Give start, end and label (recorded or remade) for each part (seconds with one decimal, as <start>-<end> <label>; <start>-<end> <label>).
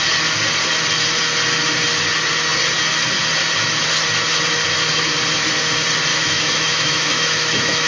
0.0-6.1 recorded; 6.1-7.9 remade